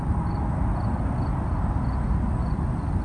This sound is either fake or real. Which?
real